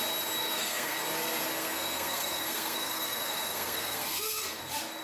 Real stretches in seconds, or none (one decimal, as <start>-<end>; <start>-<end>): 0.0-0.4; 1.0-1.6; 4.6-5.0